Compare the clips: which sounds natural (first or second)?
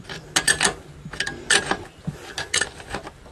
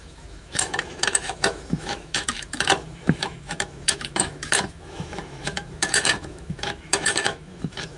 first